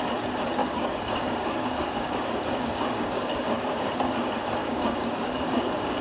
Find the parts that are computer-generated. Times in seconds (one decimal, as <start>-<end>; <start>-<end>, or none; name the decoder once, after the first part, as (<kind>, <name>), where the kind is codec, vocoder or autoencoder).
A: 0.6-3.9 (codec, DAC); 4.6-6.0